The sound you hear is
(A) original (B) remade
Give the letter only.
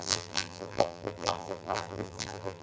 B